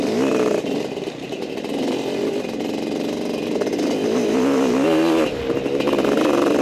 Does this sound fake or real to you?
real